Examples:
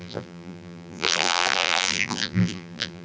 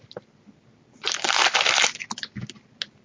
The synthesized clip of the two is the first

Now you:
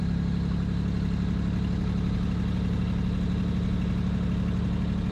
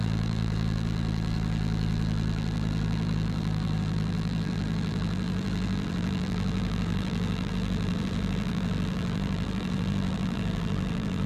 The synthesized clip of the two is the second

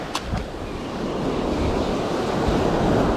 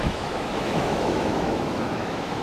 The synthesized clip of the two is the second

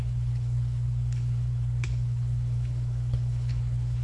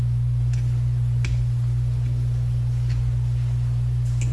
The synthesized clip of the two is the first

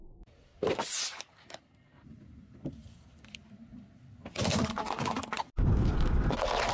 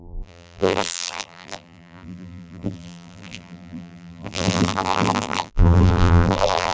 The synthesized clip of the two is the second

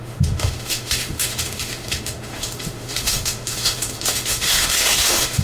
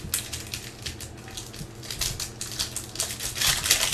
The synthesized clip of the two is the first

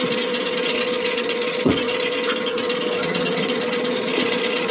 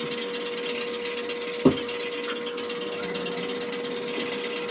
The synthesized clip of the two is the first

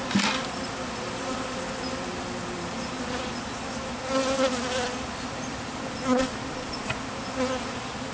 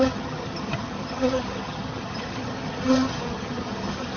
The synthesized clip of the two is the second